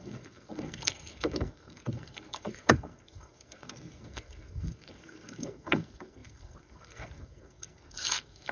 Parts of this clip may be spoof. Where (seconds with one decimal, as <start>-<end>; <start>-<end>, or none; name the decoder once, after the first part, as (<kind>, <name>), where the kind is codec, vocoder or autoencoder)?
0.0-8.5 (codec, SNAC)